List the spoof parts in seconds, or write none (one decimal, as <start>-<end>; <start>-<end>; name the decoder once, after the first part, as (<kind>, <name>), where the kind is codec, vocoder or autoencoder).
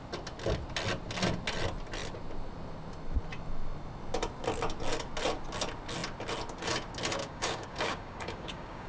7.2-8.9 (codec, DAC)